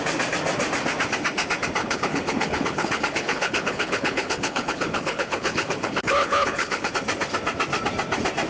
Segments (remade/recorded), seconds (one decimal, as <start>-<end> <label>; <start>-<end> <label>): 0.0-1.8 recorded; 1.8-6.9 remade; 6.9-8.5 recorded